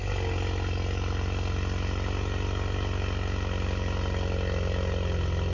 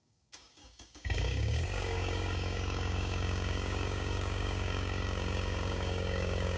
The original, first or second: first